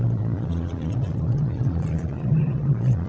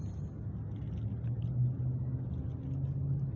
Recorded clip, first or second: second